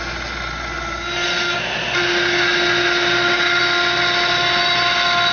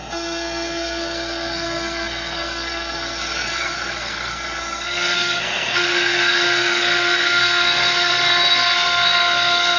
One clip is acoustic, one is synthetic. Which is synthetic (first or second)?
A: second